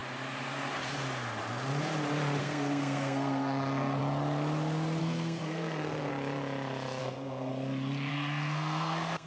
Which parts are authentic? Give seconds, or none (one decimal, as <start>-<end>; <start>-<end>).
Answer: 0.0-2.4; 4.0-5.0; 6.1-7.0; 7.5-8.1